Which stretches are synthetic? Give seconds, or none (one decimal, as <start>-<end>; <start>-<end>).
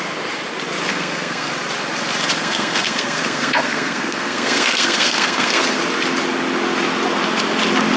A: 0.9-1.5; 2.4-5.8